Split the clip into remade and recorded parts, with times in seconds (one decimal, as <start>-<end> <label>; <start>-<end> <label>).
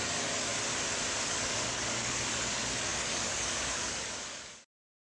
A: 0.0-0.5 remade; 0.5-1.2 recorded; 1.2-5.2 remade